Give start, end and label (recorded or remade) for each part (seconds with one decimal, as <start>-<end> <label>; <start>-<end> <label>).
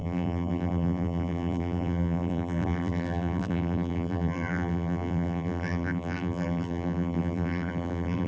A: 0.0-8.3 remade